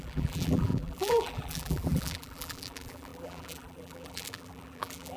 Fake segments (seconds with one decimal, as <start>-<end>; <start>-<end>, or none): 0.0-5.2